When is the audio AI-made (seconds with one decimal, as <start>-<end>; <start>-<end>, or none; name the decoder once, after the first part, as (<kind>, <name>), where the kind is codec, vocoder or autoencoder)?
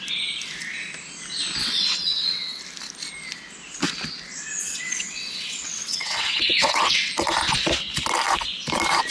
1.6-2.6 (vocoder, WaveNeXt); 4.6-7.1